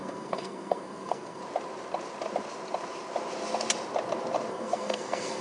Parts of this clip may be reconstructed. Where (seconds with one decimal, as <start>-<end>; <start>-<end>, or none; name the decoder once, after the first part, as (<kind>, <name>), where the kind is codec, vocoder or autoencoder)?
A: 0.0-1.4 (codec, SNAC); 4.5-5.4